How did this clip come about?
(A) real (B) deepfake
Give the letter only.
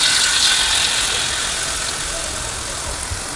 A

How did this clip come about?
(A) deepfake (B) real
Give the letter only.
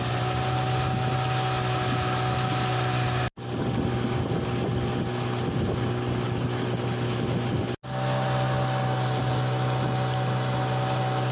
B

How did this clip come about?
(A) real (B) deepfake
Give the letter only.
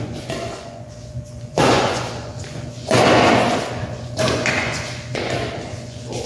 B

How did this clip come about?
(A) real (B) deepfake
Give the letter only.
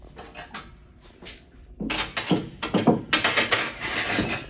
A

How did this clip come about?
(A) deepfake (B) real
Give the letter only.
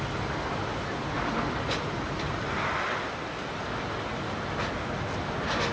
B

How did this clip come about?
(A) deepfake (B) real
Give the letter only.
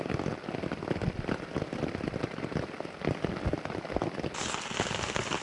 B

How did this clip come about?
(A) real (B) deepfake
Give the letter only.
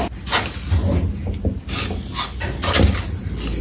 A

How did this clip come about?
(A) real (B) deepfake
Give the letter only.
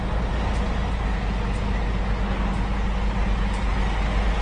A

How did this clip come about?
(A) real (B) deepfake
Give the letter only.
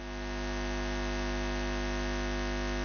A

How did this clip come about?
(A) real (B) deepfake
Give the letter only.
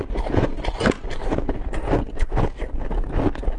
A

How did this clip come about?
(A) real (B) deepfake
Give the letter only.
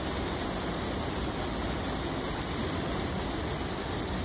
A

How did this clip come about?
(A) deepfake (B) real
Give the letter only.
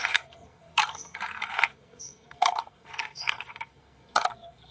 A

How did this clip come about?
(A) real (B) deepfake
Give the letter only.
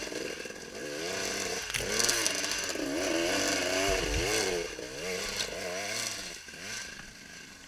A